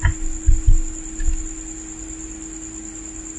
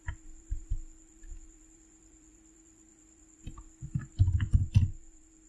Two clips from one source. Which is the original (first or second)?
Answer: first